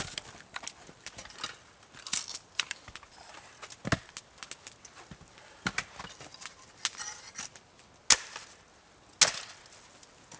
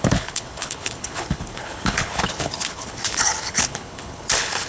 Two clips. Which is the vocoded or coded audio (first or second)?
second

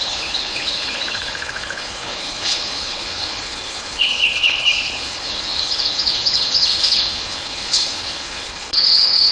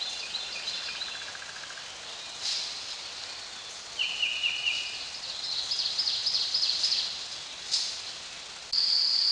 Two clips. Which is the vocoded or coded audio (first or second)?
first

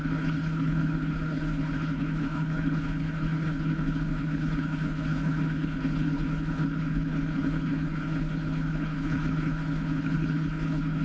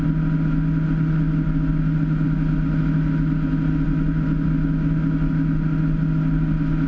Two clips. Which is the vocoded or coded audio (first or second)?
first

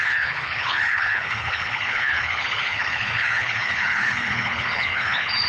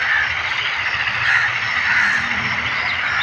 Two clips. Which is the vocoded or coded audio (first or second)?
first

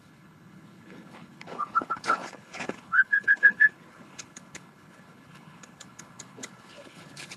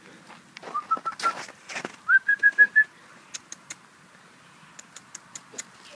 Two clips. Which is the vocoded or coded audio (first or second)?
first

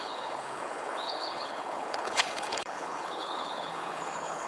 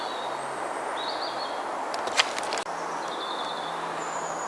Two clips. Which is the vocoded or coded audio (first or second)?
first